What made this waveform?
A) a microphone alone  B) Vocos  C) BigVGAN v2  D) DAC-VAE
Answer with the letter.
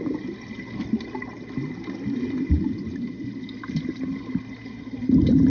A